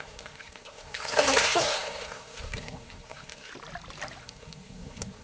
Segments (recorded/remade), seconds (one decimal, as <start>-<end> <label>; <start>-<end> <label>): 0.0-3.5 remade; 3.5-4.2 recorded; 4.2-5.2 remade